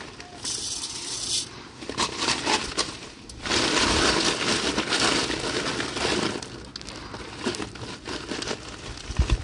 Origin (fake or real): real